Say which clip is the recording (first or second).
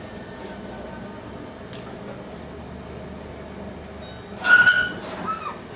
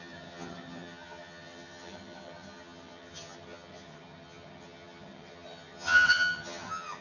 first